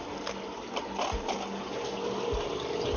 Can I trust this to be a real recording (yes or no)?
yes